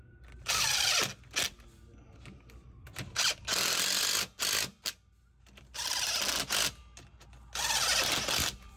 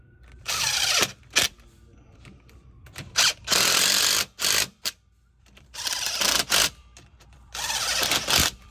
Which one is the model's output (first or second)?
second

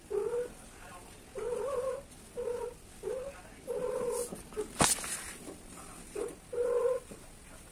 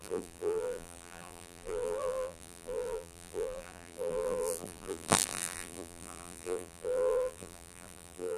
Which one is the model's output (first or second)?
second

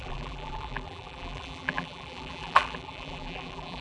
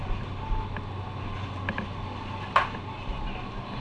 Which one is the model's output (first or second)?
first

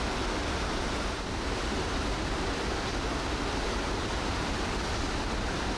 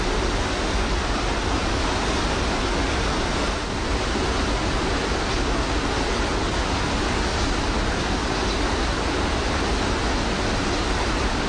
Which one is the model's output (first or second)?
first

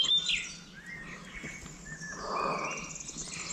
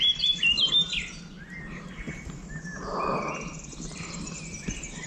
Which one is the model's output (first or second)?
second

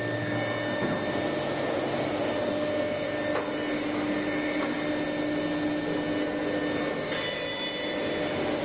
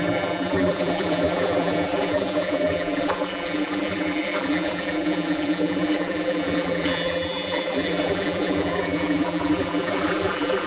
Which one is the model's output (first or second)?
second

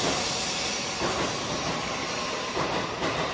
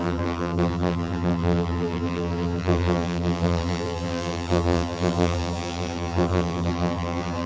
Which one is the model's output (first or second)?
second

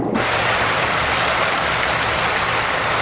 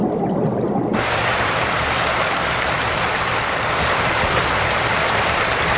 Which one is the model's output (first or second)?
second